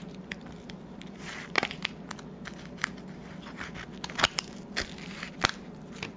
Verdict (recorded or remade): recorded